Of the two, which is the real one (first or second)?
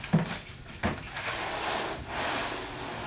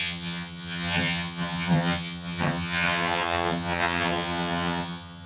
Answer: first